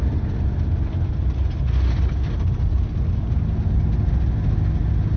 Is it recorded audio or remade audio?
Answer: recorded